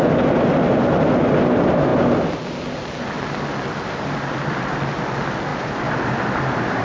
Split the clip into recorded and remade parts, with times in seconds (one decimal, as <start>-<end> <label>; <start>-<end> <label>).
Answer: 0.0-5.5 recorded; 5.5-6.8 remade